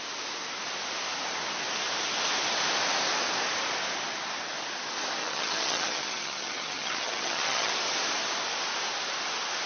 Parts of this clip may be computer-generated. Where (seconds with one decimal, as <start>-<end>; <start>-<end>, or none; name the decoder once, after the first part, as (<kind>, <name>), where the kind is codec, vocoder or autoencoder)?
5.2-7.7 (vocoder, HiFi-GAN)